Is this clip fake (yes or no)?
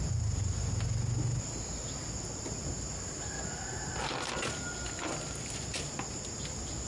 no